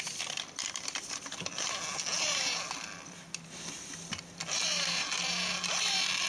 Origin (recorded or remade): recorded